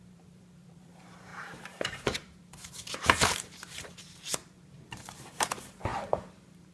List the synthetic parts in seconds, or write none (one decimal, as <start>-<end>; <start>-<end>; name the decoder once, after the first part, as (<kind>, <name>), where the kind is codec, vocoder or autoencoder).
0.0-6.7 (vocoder, BigVGAN v2)